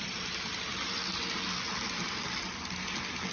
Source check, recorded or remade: recorded